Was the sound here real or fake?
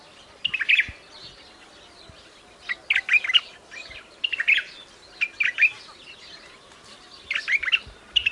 real